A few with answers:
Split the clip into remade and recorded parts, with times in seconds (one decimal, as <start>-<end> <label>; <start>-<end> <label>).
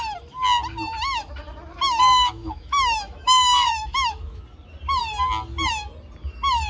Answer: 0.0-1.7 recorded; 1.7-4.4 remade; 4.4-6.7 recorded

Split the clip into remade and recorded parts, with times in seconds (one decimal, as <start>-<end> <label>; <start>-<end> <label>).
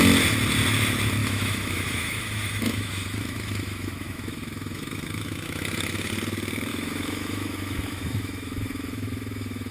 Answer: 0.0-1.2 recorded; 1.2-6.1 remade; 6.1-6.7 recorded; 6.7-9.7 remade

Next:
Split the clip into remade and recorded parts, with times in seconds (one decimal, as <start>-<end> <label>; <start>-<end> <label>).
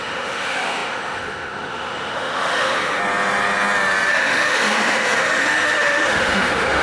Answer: 0.0-3.0 remade; 3.0-4.1 recorded; 4.1-6.8 remade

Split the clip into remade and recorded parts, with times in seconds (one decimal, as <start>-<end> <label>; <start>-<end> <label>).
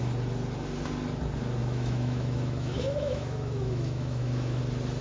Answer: 0.0-1.6 recorded; 1.6-4.6 remade; 4.6-5.0 recorded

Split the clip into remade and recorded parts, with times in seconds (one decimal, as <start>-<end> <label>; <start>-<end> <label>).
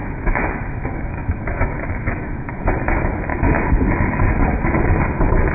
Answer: 0.0-2.6 remade; 2.6-5.5 recorded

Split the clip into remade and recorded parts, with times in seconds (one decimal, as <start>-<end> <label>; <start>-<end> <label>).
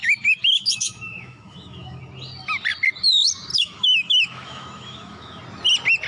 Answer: 0.0-2.0 remade; 2.0-3.5 recorded; 3.5-5.4 remade; 5.4-6.1 recorded